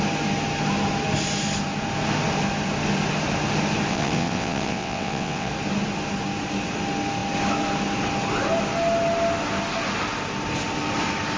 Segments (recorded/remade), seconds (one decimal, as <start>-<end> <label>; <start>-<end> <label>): 0.0-3.9 recorded; 3.9-5.5 remade; 5.5-11.4 recorded